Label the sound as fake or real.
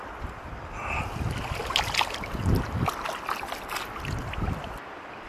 real